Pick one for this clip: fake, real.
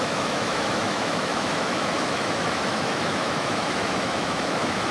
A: fake